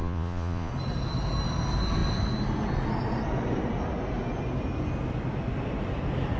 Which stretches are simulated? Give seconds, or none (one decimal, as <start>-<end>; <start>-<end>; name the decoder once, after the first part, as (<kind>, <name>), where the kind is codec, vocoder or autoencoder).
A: 0.0-0.7 (vocoder, Vocos)